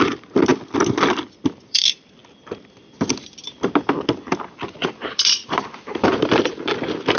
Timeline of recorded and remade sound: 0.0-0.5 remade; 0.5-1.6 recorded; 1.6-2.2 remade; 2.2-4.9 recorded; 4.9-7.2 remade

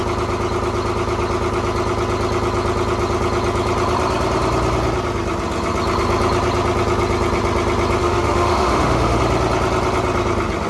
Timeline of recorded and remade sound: 0.0-8.0 recorded; 8.0-9.2 remade; 9.2-10.7 recorded

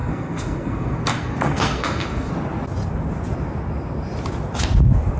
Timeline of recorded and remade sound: 0.0-2.3 remade; 2.3-5.2 recorded

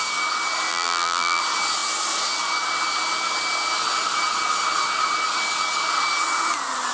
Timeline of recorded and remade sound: 0.0-0.7 recorded; 0.7-1.4 remade; 1.4-6.9 recorded

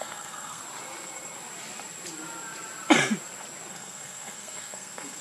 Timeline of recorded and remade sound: 0.0-0.6 remade; 0.6-3.7 recorded; 3.7-5.2 remade